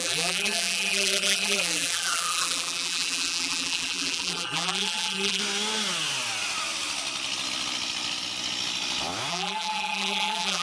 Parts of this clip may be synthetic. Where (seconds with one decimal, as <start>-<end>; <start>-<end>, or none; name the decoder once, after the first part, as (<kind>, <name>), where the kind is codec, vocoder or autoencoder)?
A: 0.0-5.4 (vocoder, BigVGAN v2); 9.3-10.6